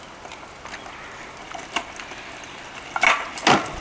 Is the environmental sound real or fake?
real